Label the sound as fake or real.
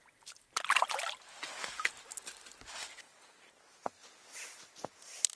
real